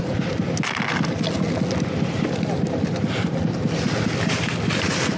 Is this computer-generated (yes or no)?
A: no